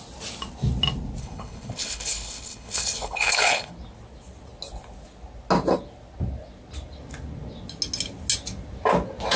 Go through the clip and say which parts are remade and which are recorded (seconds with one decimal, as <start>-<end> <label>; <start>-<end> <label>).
0.0-1.2 recorded; 1.2-3.7 remade; 3.7-9.4 recorded